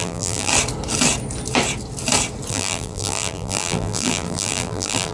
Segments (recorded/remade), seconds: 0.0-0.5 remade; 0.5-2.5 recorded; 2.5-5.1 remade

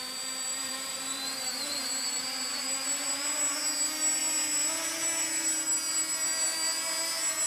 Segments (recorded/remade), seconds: 0.0-0.6 recorded; 0.6-1.9 remade; 1.9-7.5 recorded

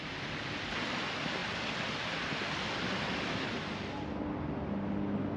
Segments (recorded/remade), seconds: 0.0-5.4 recorded

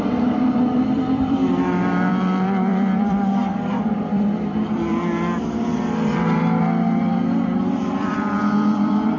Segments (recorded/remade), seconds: 0.0-1.4 remade; 1.4-2.1 recorded; 2.1-9.2 remade

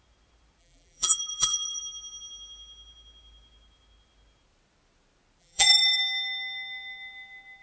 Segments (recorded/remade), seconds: 0.0-0.6 recorded; 0.6-1.8 remade; 1.8-5.4 recorded; 5.4-6.0 remade; 6.0-7.6 recorded

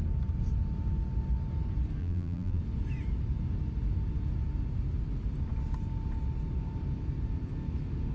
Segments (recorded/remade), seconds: 0.0-2.0 recorded; 2.0-2.6 remade; 2.6-8.1 recorded